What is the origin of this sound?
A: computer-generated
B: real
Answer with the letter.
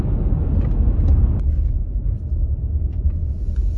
B